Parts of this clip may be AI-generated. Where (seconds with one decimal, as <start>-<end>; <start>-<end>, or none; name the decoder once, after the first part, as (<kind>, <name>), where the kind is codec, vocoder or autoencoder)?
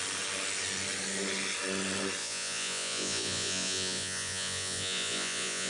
2.2-5.7 (vocoder, Vocos)